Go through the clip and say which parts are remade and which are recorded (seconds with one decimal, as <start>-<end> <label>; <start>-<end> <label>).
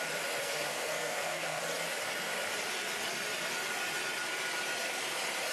0.0-0.4 recorded; 0.4-1.6 remade; 1.6-5.5 recorded